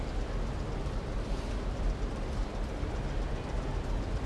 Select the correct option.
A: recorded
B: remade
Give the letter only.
B